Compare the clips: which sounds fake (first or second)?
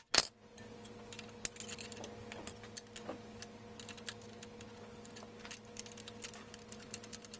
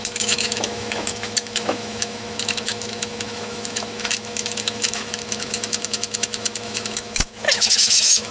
second